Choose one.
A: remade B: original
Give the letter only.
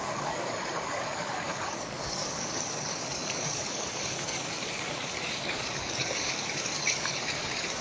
A